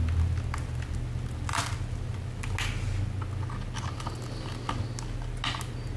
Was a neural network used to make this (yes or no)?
no